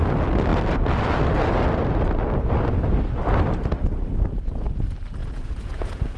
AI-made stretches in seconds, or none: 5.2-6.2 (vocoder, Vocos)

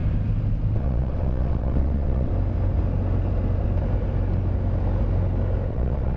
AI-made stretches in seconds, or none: 0.7-2.3 (vocoder, WaveNeXt); 5.7-6.2

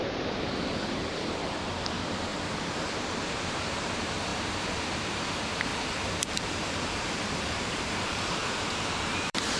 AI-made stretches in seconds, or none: 0.0-2.3 (vocoder, BigVGAN v2); 3.3-5.7; 6.3-9.6

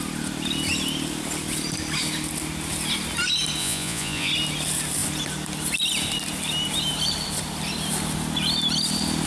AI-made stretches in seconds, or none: 3.6-4.3 (vocoder, Vocos)

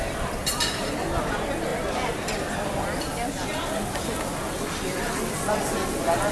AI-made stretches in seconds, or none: none

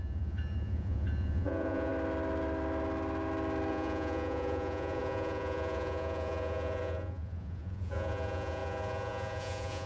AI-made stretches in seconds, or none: 0.0-1.9 (vocoder, Vocos); 3.7-9.9

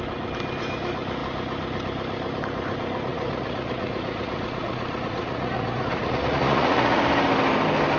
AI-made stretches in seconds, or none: 3.1-7.0 (vocoder, Vocos)